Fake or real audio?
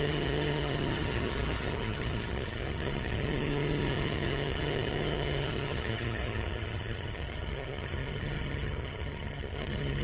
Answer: fake